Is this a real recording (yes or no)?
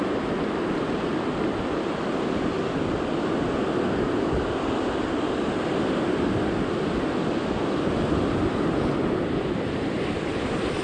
yes